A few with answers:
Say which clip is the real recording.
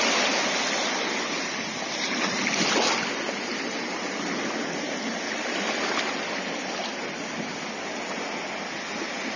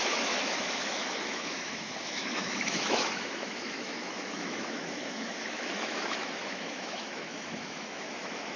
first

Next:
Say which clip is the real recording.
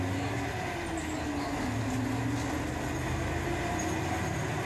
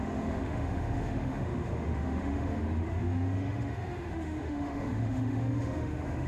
first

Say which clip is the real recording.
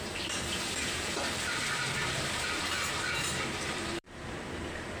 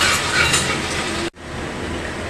second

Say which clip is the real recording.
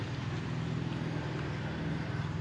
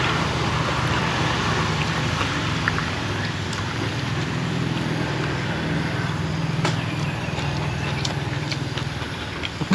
first